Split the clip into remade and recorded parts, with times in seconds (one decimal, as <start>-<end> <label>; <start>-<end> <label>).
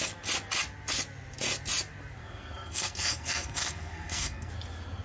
0.0-2.2 recorded; 2.2-4.5 remade; 4.5-5.0 recorded